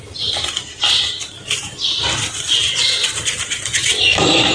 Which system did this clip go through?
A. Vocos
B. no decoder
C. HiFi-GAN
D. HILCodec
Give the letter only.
B